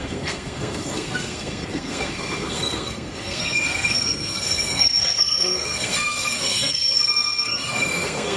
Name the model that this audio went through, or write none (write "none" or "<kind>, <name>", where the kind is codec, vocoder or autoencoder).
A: codec, SNAC